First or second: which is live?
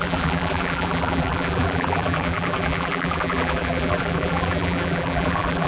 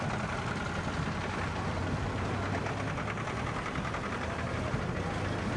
second